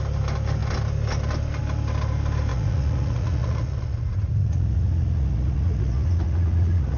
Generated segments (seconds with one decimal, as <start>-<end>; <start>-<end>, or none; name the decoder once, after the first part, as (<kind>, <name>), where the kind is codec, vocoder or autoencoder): 2.5-7.0 (vocoder, Vocos)